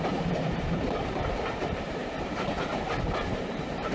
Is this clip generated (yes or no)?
yes